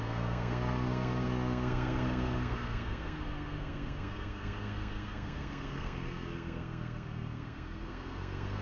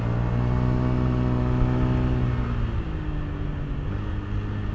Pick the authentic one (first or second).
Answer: second